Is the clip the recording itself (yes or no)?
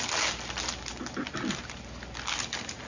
yes